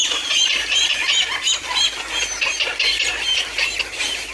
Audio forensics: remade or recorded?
recorded